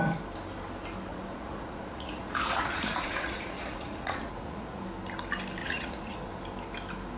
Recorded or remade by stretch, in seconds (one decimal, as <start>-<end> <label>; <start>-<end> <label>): 0.0-1.1 recorded; 1.1-4.8 remade; 4.8-5.6 recorded; 5.6-6.3 remade; 6.3-7.2 recorded